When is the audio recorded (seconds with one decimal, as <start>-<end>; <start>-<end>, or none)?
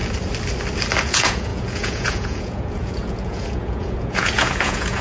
0.0-1.0